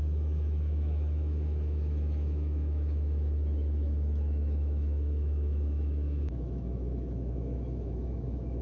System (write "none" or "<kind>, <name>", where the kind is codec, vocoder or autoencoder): autoencoder, DAC-VAE